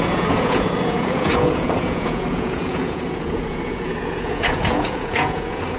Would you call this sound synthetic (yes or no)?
yes